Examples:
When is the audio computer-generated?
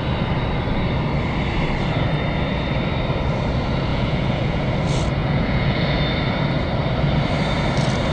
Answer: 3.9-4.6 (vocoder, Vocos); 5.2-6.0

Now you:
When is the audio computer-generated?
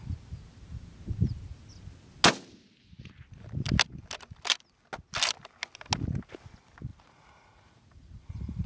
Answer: 6.9-8.7 (vocoder, Vocos)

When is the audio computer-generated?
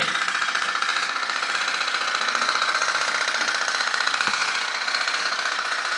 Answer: 0.0-2.8 (vocoder, Vocos); 3.8-6.0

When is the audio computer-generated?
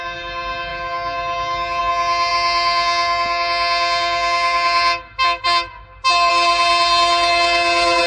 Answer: none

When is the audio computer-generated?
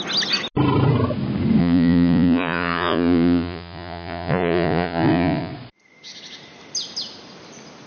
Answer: 1.6-5.5 (vocoder, Vocos)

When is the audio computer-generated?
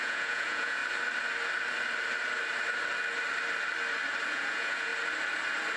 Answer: 0.0-0.8 (vocoder, Vocos); 4.3-4.9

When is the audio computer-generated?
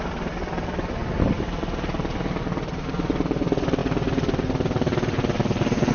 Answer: none